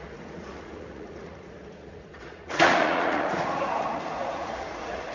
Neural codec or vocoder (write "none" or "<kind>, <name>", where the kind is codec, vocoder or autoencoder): vocoder, Vocos